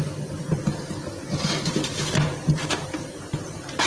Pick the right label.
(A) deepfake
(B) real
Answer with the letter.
B